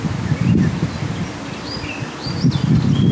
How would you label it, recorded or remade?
recorded